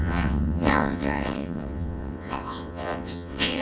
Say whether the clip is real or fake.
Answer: fake